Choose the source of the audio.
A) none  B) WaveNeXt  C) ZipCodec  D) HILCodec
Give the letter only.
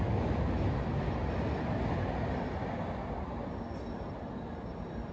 A